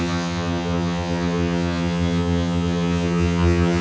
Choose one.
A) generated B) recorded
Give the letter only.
A